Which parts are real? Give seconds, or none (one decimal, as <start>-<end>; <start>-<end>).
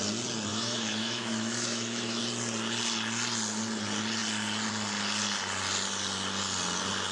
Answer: 0.0-0.5; 2.2-7.1